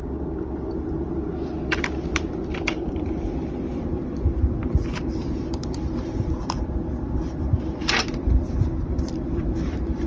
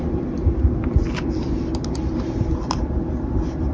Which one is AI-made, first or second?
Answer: first